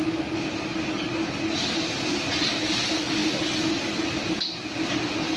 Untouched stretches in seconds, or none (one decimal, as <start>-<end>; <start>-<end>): 0.0-5.4